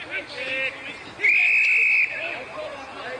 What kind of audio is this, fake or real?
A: real